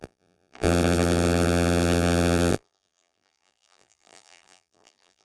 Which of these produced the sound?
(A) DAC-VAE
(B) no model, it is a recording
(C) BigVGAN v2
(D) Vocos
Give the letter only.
C